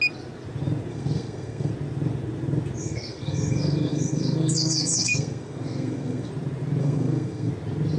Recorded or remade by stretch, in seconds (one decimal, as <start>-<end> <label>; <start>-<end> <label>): 0.0-0.9 recorded; 0.9-1.7 remade; 1.7-2.8 recorded; 2.8-6.3 remade; 6.3-6.8 recorded; 6.8-7.5 remade; 7.5-8.0 recorded